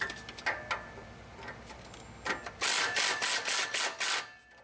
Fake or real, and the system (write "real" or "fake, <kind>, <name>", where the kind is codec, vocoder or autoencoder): real